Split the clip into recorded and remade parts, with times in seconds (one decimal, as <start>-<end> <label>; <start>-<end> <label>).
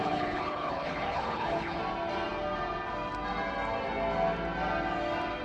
0.0-1.8 remade; 1.8-5.4 recorded